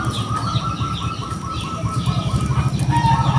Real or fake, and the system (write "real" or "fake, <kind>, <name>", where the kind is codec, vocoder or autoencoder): real